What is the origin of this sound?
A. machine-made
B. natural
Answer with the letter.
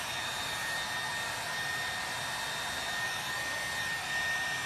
B